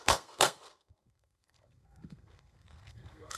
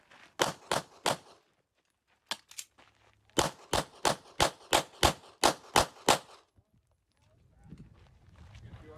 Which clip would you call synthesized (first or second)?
first